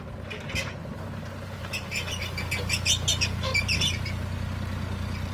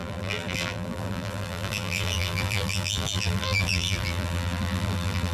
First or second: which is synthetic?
second